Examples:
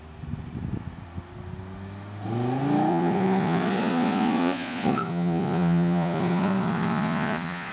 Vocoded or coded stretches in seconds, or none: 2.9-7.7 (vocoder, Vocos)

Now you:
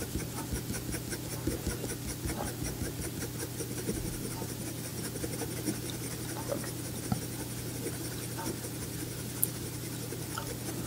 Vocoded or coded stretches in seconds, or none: 1.3-3.2 (vocoder, BigVGAN v2)

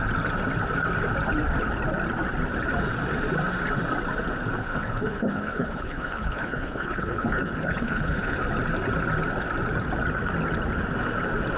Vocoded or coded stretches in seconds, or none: 4.6-8.4 (codec, HILCodec)

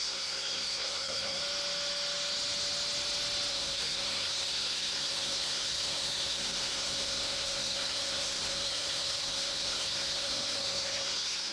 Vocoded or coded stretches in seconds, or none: 0.0-1.4 (codec, SNAC); 3.5-11.5

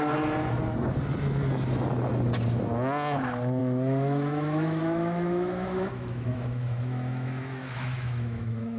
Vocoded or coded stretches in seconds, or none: 3.6-8.8 (autoencoder, DAC-VAE)

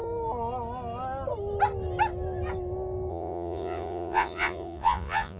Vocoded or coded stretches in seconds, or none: 3.1-5.4 (vocoder, Vocos)

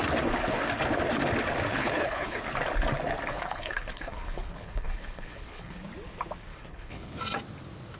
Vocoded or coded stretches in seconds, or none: 1.8-2.4 (codec, HILCodec); 3.3-5.8; 6.5-7.2

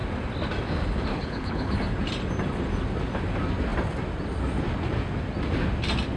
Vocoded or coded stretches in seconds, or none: 1.1-1.8 (codec, HILCodec)